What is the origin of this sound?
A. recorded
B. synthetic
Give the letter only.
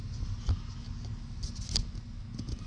A